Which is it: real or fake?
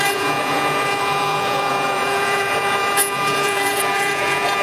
fake